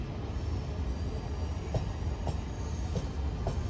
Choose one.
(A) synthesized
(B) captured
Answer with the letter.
B